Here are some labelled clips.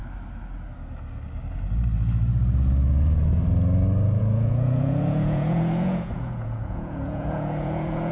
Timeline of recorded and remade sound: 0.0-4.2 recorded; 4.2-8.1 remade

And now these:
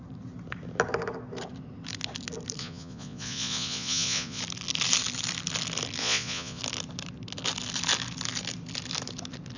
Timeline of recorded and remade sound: 0.0-2.6 recorded; 2.6-4.4 remade; 4.4-6.0 recorded; 6.0-6.6 remade; 6.6-9.6 recorded

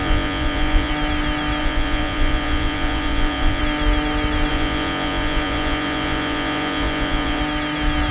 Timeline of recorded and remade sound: 0.0-0.9 remade; 0.9-1.6 recorded; 1.6-3.6 remade; 3.6-4.5 recorded; 4.5-7.4 remade; 7.4-8.1 recorded

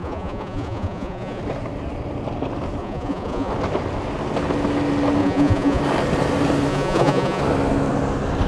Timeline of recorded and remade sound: 0.0-1.4 remade; 1.4-2.8 recorded; 2.8-3.5 remade; 3.5-5.2 recorded; 5.2-5.8 remade; 5.8-6.7 recorded; 6.7-7.4 remade; 7.4-8.5 recorded

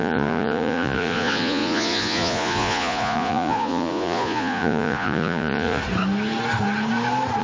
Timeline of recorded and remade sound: 0.0-5.8 remade; 5.8-7.4 recorded